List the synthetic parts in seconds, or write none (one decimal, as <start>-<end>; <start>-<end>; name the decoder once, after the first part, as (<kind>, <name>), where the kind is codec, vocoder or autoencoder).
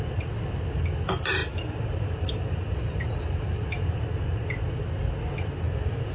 none